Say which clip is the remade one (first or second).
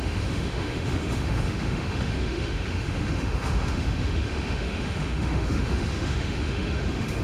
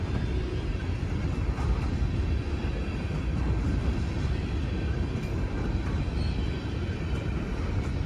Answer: first